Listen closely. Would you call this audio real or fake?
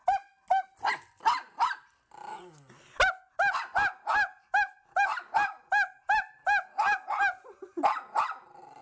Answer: real